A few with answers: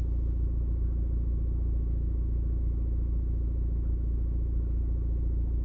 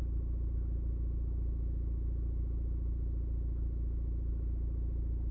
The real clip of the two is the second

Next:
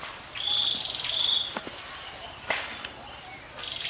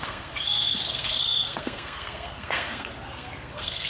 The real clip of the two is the first